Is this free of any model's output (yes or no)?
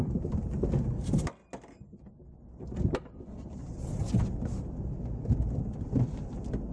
yes